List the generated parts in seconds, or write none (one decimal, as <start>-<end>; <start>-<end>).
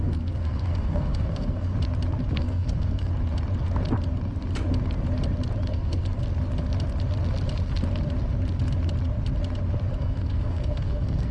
0.0-1.7; 2.3-3.1; 5.7-6.2; 10.0-11.3